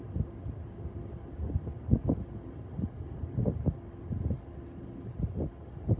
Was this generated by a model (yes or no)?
no